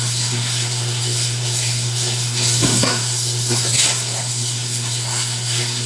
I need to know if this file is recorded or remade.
remade